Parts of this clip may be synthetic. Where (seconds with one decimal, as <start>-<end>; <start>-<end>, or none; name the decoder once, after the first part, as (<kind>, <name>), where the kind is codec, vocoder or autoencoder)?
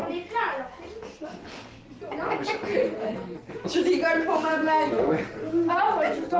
2.8-3.5 (codec, SNAC); 4.5-5.4